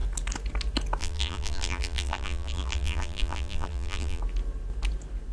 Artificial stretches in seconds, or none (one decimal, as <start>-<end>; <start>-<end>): 1.0-4.2